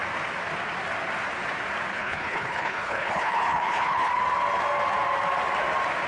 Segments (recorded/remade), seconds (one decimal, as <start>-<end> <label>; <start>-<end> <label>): 0.0-1.9 recorded; 1.9-4.1 remade; 4.1-6.1 recorded